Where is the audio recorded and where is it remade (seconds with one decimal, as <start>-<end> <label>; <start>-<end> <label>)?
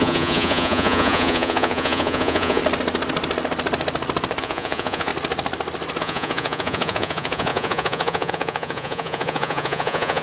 0.0-2.6 remade; 2.6-4.4 recorded; 4.4-5.1 remade; 5.1-6.0 recorded; 6.0-10.2 remade